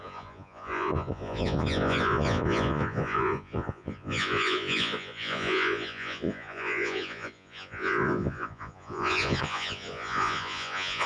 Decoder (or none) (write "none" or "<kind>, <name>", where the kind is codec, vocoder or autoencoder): vocoder, Vocos